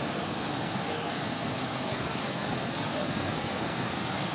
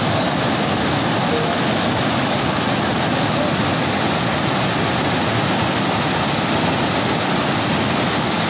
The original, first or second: second